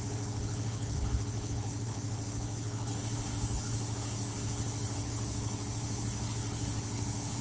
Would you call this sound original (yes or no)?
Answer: no